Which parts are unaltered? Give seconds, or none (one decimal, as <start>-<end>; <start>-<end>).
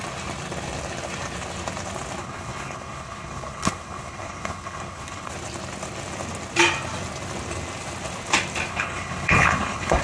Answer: 0.0-2.2; 5.3-8.7